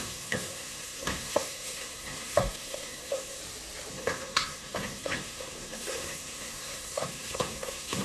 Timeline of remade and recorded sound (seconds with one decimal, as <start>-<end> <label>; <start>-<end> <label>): 0.0-3.4 remade; 3.4-3.9 recorded; 3.9-8.0 remade